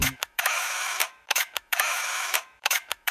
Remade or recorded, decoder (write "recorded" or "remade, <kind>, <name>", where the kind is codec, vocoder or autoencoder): remade, autoencoder, DAC-VAE